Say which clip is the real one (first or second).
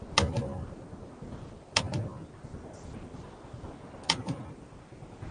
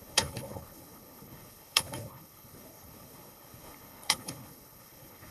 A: first